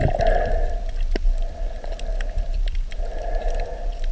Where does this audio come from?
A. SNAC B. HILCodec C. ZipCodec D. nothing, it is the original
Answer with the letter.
D